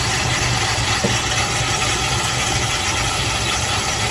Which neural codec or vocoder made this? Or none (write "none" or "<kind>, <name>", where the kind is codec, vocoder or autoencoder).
none